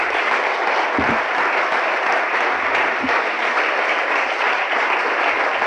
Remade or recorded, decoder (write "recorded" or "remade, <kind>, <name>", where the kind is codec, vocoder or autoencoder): recorded